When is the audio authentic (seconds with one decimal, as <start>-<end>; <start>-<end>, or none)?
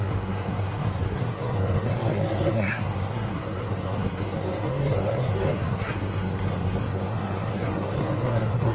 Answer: none